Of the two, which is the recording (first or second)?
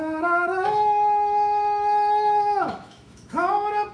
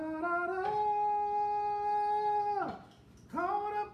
second